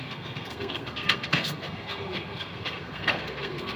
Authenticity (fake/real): fake